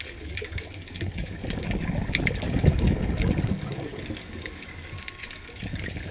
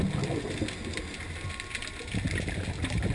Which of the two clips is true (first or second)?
second